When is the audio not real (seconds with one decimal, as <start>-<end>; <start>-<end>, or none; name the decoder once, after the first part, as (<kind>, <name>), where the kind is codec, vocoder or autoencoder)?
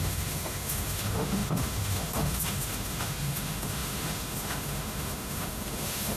0.0-6.2 (autoencoder, DAC-VAE)